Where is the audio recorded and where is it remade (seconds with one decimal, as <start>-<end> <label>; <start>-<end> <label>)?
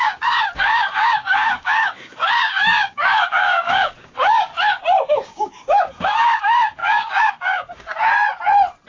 0.0-4.5 remade; 4.5-5.1 recorded; 5.1-8.1 remade; 8.1-8.9 recorded